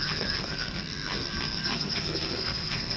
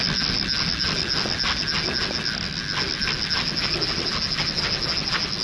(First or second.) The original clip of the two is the second